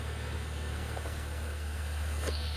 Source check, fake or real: fake